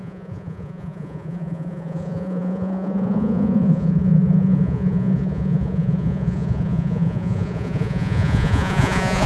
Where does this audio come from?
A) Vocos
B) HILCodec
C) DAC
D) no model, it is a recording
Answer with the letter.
A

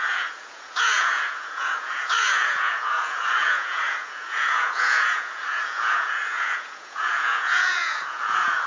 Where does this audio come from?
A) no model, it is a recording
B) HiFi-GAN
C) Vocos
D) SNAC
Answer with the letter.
C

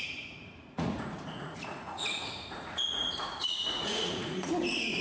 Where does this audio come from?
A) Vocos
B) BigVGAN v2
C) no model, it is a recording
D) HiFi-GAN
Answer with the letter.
A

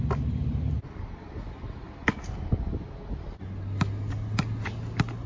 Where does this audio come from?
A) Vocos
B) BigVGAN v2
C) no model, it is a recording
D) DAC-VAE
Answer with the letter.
C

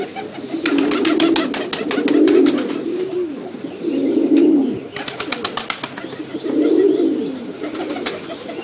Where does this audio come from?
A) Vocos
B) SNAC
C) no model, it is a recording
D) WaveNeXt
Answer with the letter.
C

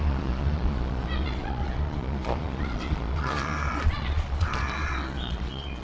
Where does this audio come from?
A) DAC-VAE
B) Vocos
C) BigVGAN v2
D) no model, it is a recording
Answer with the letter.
B